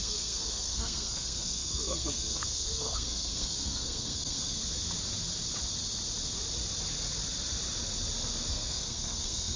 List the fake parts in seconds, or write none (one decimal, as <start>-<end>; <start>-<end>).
0.0-4.6; 8.5-9.6